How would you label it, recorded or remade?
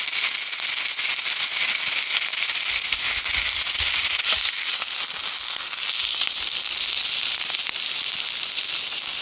recorded